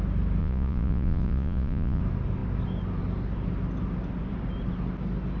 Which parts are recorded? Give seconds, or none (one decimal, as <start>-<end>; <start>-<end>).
0.0-0.4; 2.0-5.4